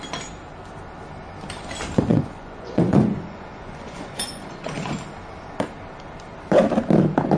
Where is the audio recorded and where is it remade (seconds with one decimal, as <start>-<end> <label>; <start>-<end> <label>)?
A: 0.0-2.1 recorded; 2.1-4.9 remade; 4.9-7.4 recorded